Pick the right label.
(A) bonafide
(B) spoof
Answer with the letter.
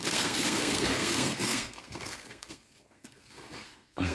B